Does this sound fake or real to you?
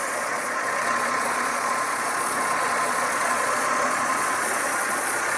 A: fake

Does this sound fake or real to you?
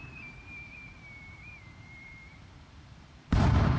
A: fake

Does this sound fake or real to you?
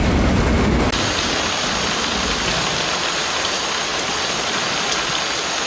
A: real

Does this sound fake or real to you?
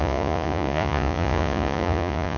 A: fake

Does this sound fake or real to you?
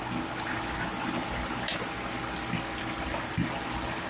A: real